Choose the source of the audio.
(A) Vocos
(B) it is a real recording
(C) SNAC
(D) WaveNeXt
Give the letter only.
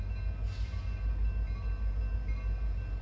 B